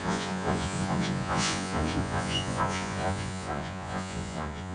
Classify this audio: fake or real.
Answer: fake